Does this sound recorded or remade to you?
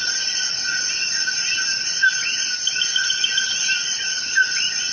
recorded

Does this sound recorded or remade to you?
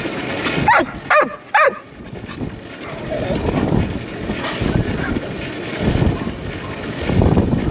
recorded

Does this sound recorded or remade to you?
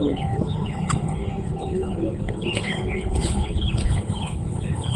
remade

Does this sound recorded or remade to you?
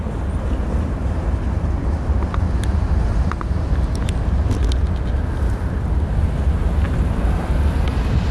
recorded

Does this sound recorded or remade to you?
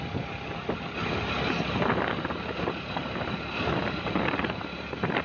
recorded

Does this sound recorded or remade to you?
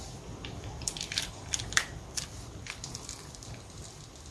remade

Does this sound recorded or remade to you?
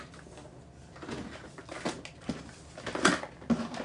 recorded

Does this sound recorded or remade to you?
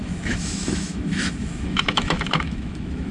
remade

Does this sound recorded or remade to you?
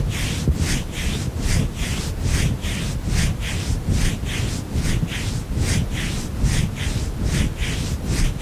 recorded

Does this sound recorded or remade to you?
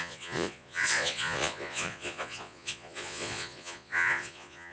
remade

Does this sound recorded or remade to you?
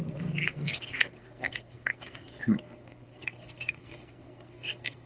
remade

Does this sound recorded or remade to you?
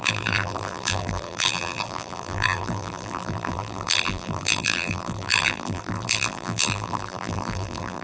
remade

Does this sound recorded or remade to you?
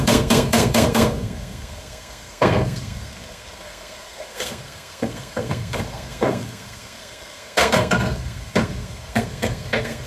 remade